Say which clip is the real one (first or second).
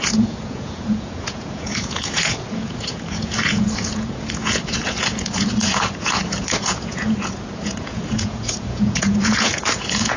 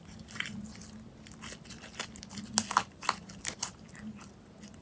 second